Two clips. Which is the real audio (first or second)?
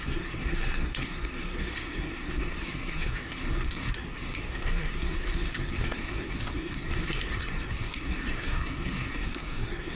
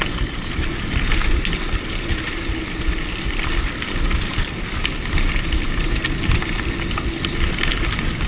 second